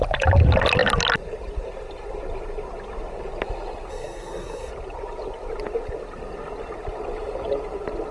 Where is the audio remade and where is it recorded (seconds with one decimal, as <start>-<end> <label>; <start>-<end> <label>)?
0.0-3.9 recorded; 3.9-4.7 remade; 4.7-8.1 recorded